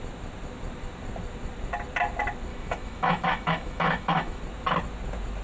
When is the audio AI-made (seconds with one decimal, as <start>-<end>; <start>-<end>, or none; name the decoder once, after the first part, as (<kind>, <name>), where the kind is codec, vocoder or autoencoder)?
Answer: 2.5-4.4 (autoencoder, DAC-VAE)